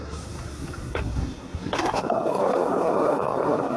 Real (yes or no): no